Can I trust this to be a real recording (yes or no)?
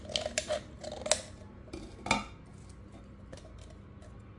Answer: yes